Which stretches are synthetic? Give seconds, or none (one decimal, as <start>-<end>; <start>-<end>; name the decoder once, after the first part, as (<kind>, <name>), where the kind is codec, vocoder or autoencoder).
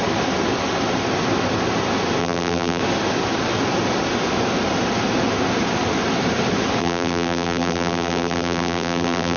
2.2-2.8 (vocoder, BigVGAN v2); 6.8-9.4